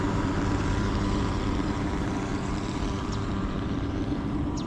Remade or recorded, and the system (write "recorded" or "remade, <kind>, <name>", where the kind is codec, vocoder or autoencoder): remade, vocoder, BigVGAN v2